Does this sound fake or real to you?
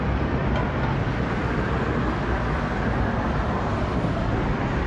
real